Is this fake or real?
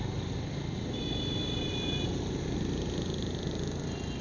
real